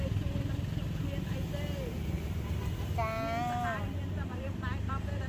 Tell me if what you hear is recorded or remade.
recorded